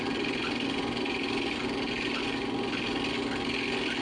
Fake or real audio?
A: real